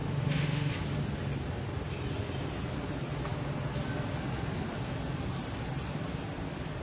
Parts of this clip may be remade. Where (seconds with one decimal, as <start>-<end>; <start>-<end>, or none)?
0.0-0.7